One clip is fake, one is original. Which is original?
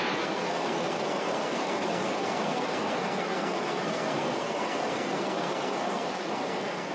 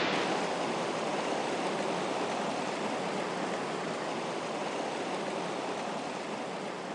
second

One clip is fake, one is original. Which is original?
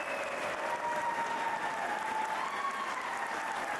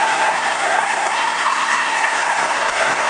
first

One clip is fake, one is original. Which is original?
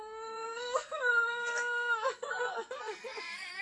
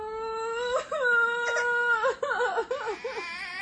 second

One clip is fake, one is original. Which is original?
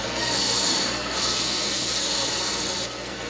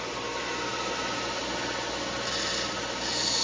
second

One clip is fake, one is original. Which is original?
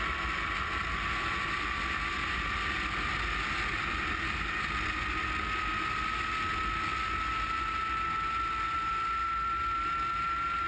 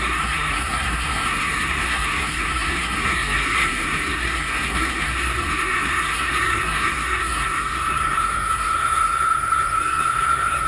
first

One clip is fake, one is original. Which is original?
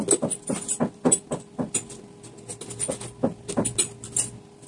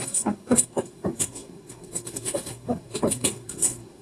first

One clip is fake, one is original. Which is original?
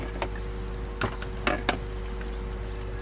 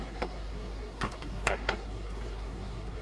first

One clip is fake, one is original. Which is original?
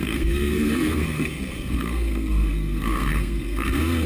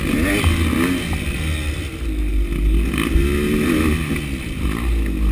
second